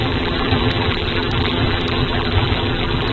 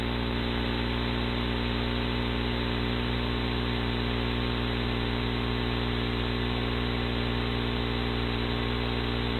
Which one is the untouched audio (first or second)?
second